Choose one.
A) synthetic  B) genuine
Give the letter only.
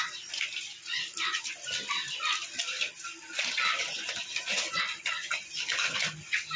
B